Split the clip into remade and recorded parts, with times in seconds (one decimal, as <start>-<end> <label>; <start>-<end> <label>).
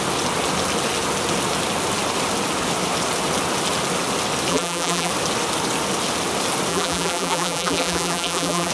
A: 0.0-4.5 recorded; 4.5-5.1 remade; 5.1-6.7 recorded; 6.7-8.7 remade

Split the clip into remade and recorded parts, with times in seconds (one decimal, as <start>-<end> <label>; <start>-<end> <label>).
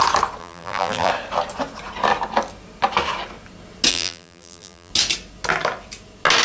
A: 0.0-0.4 recorded; 0.4-1.1 remade; 1.1-3.9 recorded; 3.9-4.9 remade; 4.9-6.4 recorded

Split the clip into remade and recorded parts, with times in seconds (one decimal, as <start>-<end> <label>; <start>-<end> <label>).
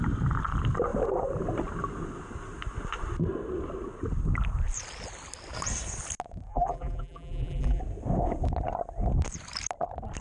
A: 0.0-6.5 recorded; 6.5-7.8 remade; 7.8-10.2 recorded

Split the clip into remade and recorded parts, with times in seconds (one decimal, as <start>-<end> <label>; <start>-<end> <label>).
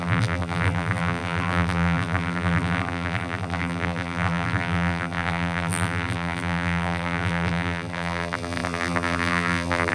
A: 0.0-9.9 remade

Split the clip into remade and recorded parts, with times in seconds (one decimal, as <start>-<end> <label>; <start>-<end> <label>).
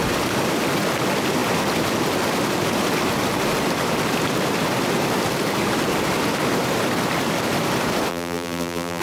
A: 0.0-8.1 recorded; 8.1-9.0 remade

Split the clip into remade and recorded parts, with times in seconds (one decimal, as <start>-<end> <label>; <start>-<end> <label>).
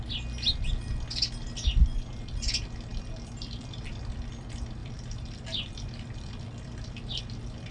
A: 0.0-2.9 recorded; 2.9-3.8 remade; 3.8-4.8 recorded; 4.8-7.2 remade; 7.2-7.7 recorded